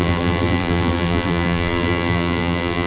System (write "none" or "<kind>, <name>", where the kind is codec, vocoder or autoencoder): vocoder, BigVGAN v2